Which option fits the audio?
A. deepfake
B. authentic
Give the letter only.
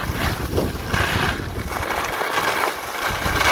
B